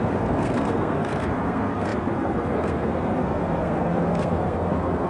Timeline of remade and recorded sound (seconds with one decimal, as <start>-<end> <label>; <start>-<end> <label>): 0.0-5.1 remade